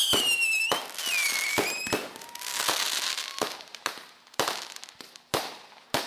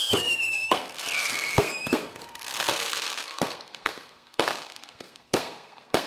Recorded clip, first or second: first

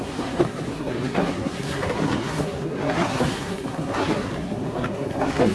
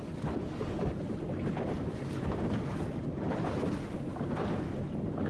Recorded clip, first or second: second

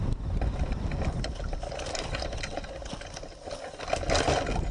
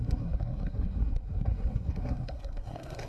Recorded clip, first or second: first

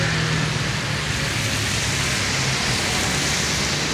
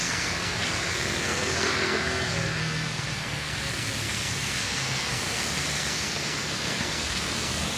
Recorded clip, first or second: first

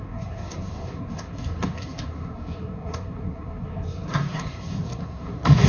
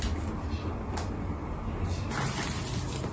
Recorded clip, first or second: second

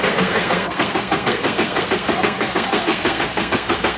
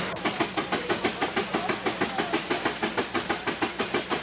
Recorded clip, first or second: second